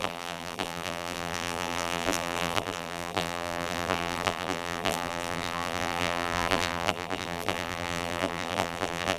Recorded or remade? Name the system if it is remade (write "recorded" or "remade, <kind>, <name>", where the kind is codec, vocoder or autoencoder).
remade, vocoder, BigVGAN v2